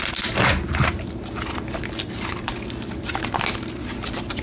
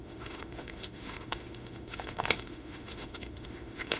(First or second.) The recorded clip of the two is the first